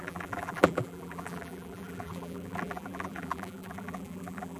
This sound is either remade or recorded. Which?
remade